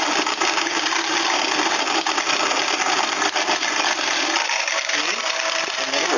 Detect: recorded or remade recorded